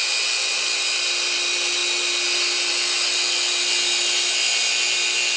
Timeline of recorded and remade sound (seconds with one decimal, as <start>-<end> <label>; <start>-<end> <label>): 0.0-5.4 recorded